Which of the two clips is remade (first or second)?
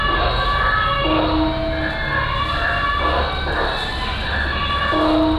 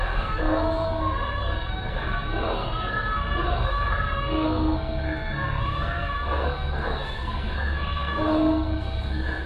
second